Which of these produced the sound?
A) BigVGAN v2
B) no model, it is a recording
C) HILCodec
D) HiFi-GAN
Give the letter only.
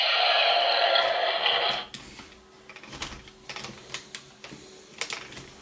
B